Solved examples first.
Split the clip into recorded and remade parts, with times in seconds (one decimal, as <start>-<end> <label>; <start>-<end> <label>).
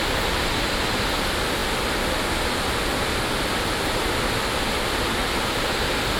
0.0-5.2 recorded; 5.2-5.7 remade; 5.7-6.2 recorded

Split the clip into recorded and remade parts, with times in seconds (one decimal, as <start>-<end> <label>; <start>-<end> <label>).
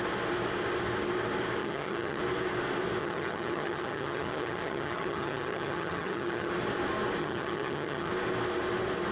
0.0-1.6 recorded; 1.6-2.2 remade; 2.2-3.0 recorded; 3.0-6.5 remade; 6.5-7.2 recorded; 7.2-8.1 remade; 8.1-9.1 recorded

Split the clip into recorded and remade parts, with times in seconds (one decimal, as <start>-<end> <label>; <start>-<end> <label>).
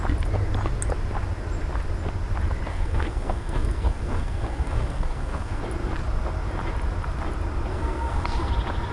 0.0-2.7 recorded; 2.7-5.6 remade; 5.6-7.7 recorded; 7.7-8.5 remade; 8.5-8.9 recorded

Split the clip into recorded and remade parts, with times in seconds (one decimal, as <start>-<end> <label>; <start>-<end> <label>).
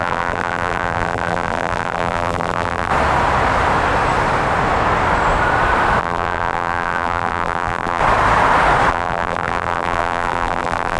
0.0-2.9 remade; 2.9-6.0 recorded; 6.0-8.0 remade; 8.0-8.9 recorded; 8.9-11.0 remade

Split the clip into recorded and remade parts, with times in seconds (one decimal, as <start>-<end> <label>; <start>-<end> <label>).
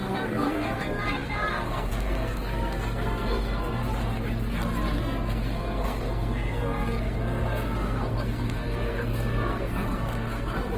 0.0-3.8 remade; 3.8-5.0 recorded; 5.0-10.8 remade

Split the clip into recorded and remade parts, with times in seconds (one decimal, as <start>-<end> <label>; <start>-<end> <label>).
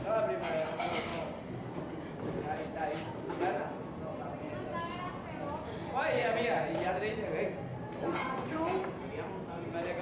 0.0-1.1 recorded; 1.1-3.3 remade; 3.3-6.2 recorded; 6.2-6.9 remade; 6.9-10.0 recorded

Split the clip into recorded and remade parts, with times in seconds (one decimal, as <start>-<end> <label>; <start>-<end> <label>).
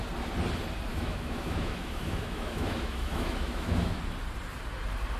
0.0-0.9 recorded; 0.9-4.0 remade; 4.0-5.2 recorded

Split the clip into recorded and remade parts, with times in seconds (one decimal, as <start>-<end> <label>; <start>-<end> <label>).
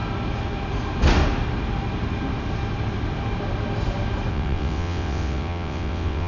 0.0-4.3 recorded; 4.3-6.3 remade